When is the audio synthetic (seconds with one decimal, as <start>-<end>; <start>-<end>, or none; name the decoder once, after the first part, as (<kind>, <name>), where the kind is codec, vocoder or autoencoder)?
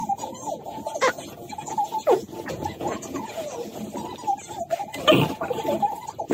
0.0-3.8 (vocoder, Vocos)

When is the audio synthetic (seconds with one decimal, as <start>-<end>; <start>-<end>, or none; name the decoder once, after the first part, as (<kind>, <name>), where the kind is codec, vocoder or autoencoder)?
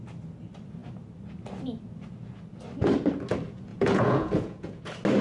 3.7-4.8 (vocoder, Vocos)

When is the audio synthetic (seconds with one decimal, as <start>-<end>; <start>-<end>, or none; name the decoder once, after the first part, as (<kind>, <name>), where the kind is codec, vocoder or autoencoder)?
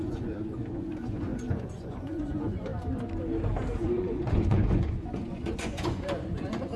0.0-2.7 (vocoder, Vocos); 3.8-6.8